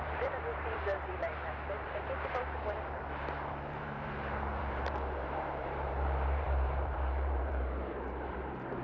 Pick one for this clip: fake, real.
fake